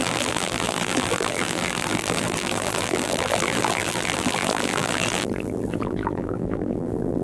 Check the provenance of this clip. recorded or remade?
remade